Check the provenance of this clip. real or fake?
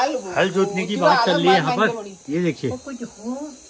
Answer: real